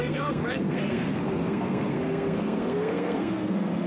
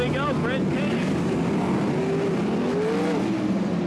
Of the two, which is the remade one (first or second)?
first